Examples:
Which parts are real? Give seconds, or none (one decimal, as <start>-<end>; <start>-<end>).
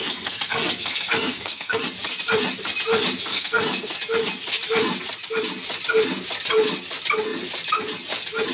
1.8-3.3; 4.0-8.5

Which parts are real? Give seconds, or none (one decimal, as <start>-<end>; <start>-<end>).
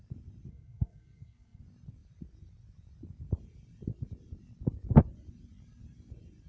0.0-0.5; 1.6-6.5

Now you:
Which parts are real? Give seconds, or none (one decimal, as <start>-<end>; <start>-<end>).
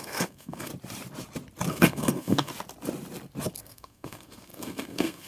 0.7-1.7; 2.5-3.6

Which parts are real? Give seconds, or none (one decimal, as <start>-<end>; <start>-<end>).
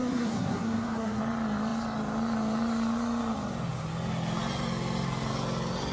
1.2-5.9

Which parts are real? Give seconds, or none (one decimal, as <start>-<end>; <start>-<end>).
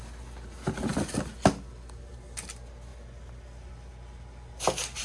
0.0-5.0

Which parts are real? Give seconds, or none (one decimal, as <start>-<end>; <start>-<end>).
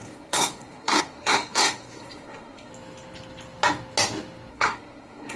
2.7-4.5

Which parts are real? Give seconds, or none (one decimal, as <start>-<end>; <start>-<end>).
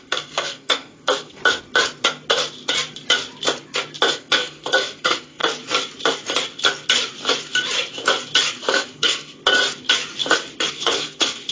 1.4-4.1; 5.4-8.6; 9.4-10.7